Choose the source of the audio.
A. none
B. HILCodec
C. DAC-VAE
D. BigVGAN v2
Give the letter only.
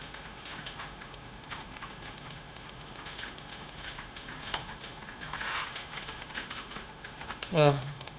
C